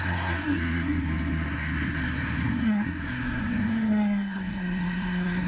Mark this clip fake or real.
fake